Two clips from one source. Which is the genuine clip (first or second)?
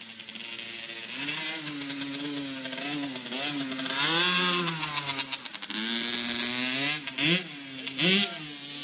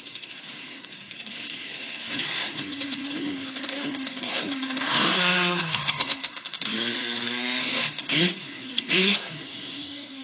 first